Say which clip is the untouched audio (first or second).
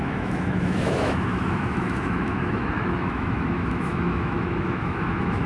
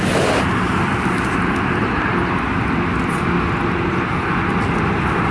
second